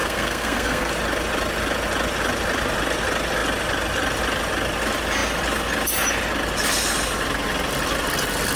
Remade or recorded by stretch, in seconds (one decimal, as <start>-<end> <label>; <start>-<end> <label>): 0.0-0.9 remade; 0.9-8.6 recorded